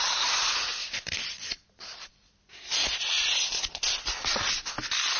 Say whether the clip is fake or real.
real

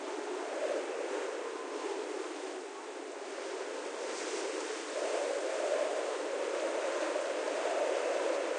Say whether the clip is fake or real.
fake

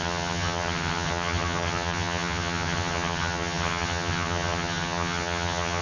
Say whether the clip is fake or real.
fake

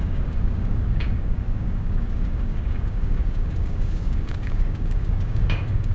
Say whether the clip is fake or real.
fake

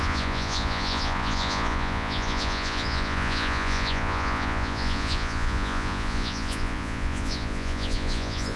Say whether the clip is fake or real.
fake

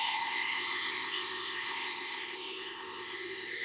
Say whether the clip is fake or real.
fake